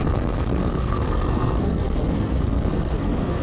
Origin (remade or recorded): remade